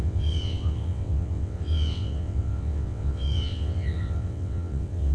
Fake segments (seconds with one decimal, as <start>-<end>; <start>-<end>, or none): 0.0-5.1